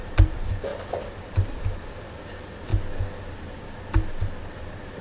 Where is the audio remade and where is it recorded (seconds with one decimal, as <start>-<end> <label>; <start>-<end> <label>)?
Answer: 0.0-2.7 remade; 2.7-3.2 recorded; 3.2-3.6 remade; 3.6-5.0 recorded